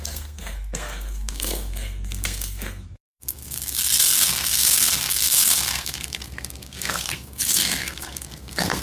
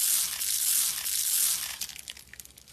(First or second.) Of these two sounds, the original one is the second